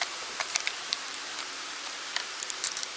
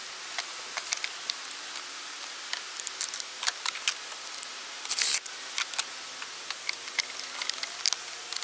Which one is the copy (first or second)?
first